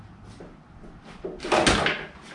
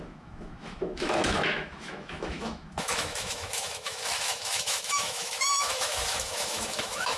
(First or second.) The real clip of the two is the first